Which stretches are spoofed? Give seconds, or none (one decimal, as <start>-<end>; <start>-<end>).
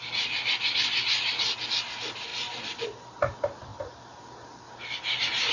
none